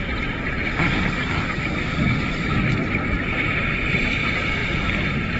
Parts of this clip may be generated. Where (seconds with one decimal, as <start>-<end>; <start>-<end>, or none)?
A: 1.9-3.7; 4.6-5.4